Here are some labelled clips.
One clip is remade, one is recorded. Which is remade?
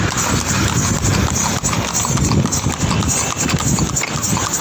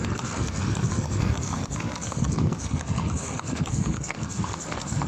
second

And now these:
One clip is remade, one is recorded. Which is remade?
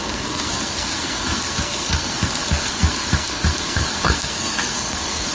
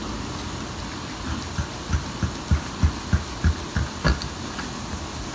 first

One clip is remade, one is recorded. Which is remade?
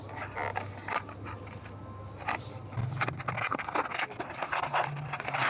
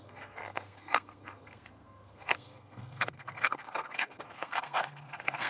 second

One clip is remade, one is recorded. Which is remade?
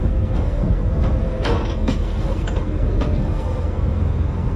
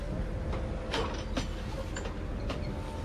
first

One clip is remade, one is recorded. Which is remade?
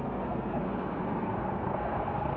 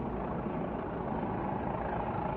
first